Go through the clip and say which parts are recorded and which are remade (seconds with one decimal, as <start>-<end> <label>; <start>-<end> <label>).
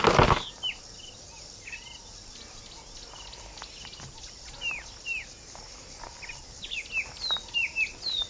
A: 0.0-8.3 recorded